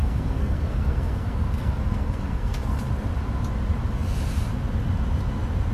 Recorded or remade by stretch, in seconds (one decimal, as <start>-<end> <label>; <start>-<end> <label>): 0.0-2.8 remade; 2.8-5.7 recorded